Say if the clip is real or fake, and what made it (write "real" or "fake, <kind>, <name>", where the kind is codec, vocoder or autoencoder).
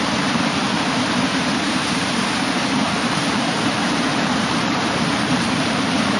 fake, vocoder, BigVGAN v2